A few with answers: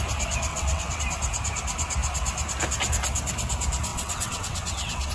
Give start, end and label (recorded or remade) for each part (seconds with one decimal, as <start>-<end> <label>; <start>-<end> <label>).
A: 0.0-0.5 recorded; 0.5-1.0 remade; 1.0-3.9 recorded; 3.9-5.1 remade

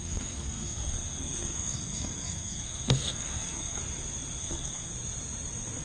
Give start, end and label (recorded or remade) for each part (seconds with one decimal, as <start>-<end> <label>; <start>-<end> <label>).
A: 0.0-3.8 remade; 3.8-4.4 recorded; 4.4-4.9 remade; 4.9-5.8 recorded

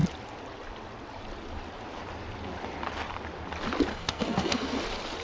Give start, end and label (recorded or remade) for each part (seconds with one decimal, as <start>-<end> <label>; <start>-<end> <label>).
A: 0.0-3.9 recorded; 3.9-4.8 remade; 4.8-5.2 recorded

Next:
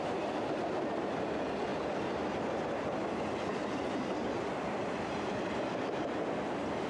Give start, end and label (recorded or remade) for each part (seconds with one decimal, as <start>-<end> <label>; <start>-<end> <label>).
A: 0.0-1.7 recorded; 1.7-5.8 remade; 5.8-6.9 recorded

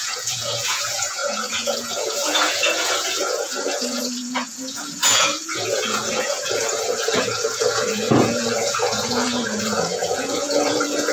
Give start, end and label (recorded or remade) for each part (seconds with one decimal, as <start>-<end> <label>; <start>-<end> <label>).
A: 0.0-11.1 remade